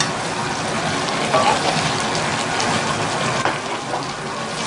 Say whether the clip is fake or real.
real